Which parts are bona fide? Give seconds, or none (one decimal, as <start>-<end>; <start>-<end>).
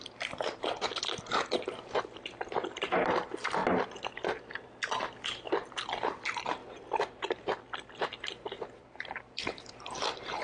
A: 3.6-6.1; 6.6-8.0